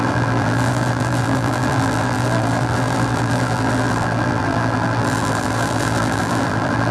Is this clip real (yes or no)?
no